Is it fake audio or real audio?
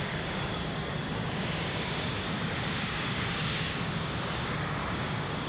fake